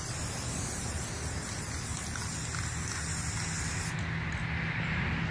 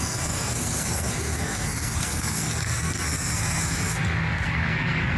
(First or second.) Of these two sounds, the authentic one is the first